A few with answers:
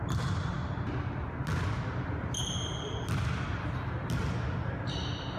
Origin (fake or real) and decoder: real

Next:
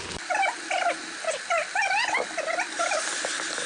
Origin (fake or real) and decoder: real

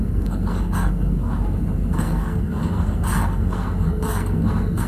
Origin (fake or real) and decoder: fake, codec, SNAC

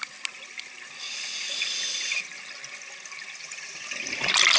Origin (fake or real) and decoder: real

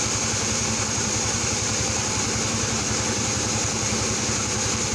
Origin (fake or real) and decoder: fake, vocoder, BigVGAN v2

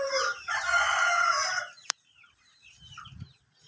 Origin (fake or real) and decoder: fake, vocoder, BigVGAN v2